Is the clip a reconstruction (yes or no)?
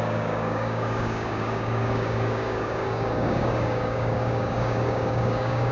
yes